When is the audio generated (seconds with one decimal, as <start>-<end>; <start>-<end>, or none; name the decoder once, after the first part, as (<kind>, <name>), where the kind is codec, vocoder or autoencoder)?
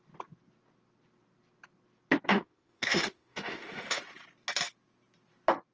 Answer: 2.3-4.0 (autoencoder, DAC-VAE)